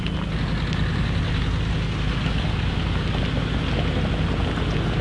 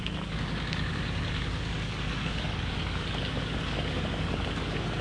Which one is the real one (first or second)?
first